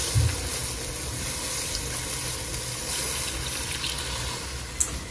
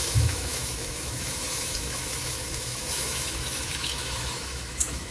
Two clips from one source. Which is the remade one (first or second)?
second